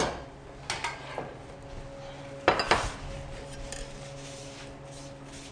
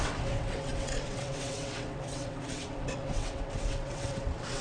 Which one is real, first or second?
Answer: first